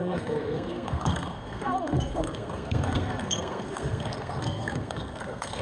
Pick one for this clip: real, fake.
fake